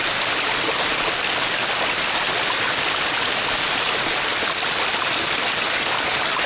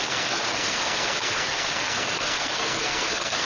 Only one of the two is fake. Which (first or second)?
second